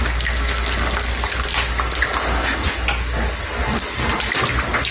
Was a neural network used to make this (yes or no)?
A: no